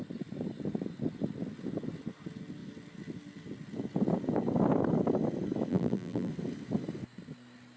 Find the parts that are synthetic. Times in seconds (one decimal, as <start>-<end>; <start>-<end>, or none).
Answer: 5.7-6.3